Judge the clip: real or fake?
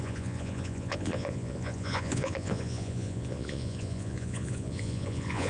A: fake